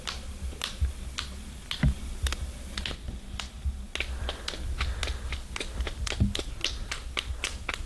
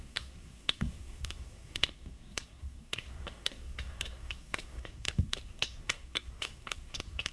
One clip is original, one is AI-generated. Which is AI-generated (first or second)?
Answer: second